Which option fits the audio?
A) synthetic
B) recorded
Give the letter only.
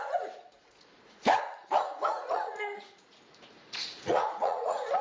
A